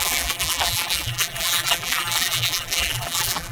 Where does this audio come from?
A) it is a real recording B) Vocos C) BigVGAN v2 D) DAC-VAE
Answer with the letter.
C